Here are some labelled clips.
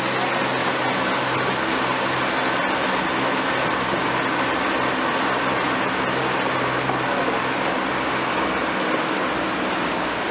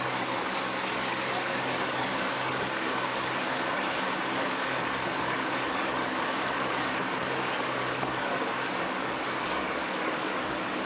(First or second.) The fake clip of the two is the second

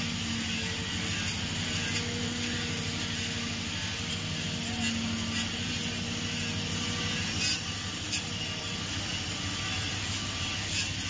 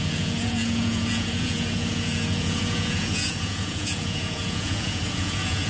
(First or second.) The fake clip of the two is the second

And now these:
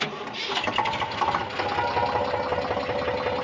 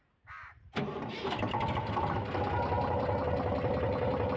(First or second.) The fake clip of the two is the second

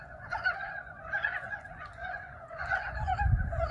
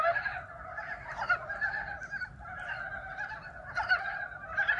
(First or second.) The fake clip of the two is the first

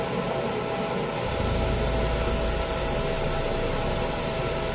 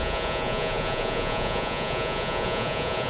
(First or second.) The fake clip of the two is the second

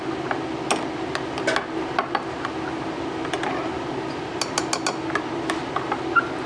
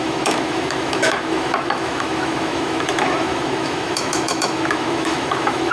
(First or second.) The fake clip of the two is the second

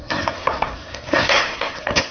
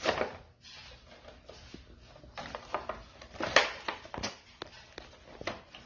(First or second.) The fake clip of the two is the first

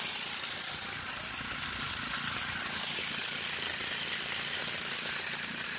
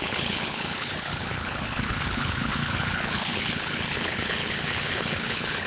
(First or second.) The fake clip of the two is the second